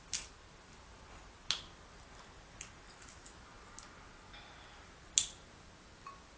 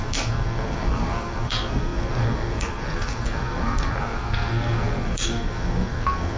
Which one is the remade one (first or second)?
second